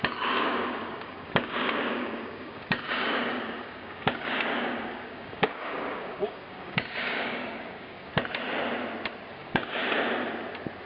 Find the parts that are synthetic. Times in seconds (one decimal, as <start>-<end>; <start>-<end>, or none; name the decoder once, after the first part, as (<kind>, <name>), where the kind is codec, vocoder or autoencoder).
0.0-8.1 (codec, DAC); 9.3-9.8